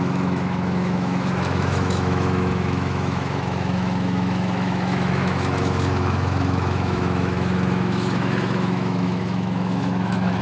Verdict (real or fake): fake